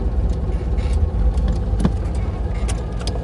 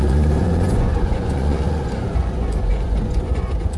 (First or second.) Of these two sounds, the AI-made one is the second